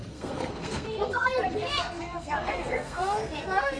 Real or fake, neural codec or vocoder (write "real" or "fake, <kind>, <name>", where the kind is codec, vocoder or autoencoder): fake, codec, SNAC